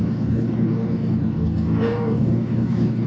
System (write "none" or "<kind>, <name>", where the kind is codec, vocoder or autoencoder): codec, DAC